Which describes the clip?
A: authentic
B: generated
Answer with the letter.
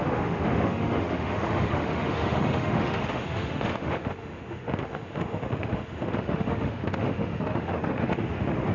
B